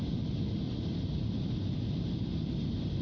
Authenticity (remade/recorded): recorded